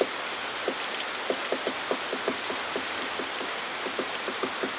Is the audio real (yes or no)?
yes